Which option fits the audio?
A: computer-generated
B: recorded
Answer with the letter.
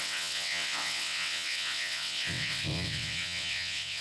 A